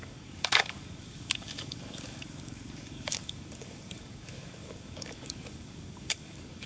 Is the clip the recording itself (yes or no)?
no